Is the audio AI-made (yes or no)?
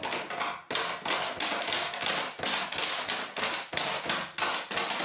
no